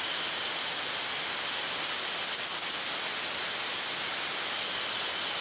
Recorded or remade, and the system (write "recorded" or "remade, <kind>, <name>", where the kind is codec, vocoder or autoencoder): recorded